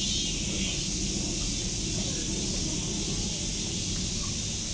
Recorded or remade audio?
recorded